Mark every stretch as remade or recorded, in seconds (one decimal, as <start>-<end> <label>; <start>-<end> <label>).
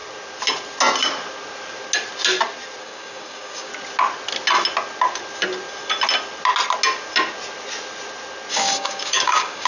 0.0-2.8 recorded; 2.8-3.7 remade; 3.7-8.5 recorded; 8.5-9.7 remade